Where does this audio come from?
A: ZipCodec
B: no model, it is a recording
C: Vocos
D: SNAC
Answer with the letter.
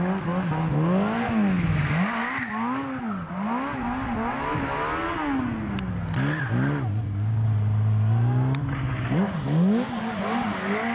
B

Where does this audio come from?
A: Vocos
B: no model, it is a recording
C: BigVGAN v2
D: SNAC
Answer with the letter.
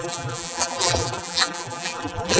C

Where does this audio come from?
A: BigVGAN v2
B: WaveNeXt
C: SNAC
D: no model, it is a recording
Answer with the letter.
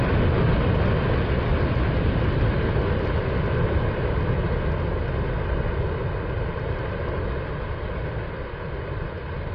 D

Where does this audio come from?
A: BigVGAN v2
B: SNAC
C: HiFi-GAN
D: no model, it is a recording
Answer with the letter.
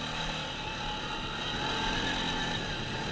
D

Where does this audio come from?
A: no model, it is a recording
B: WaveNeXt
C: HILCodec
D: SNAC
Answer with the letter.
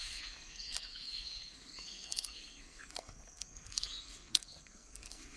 D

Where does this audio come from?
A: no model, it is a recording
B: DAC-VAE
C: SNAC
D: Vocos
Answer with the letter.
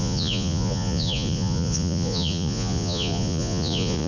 D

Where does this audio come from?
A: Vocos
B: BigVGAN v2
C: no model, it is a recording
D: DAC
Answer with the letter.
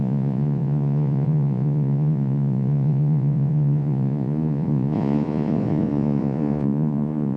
A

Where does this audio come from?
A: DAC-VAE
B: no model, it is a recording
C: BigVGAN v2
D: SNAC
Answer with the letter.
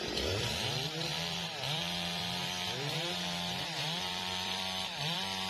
C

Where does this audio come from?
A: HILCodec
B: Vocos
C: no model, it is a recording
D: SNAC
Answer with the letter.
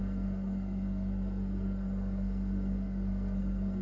D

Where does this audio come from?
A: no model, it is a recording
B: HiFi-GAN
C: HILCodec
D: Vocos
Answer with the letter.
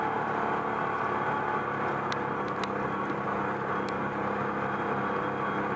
A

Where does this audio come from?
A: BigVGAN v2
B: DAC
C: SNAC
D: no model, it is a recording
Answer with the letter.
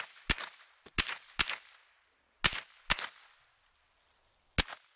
D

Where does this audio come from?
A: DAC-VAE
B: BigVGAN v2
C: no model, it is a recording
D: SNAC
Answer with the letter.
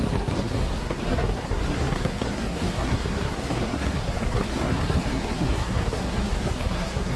D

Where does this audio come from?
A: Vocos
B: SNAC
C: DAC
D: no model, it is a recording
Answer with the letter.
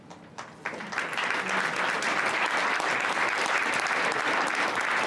D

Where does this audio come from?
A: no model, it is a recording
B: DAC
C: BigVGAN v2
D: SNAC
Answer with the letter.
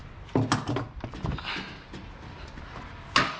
A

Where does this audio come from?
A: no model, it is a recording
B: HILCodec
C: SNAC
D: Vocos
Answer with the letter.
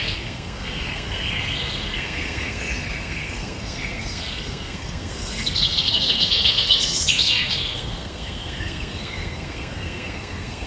C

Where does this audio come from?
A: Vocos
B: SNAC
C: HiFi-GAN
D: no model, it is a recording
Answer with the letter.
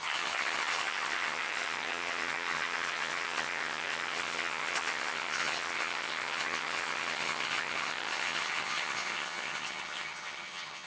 C